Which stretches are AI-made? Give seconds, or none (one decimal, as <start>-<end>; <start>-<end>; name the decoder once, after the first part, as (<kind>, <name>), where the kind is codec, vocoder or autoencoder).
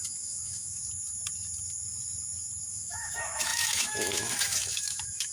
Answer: 0.0-0.8 (autoencoder, DAC-VAE); 2.7-5.3